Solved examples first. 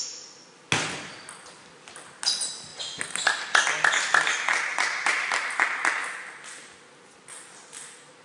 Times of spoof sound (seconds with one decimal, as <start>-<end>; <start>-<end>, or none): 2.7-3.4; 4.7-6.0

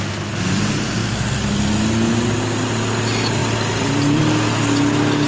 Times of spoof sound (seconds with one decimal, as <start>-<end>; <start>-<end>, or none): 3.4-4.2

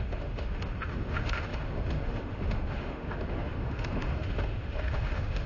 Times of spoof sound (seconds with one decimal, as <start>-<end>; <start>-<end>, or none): 0.0-5.5

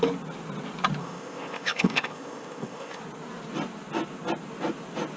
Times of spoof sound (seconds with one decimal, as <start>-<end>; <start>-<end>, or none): 1.0-3.0

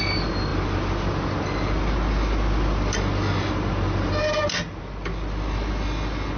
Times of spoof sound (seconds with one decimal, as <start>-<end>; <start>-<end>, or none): none

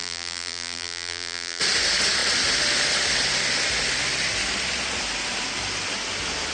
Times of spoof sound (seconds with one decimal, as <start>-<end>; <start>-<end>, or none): 0.0-1.6

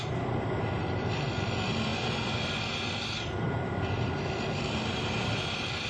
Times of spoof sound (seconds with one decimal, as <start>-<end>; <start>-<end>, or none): 0.0-5.9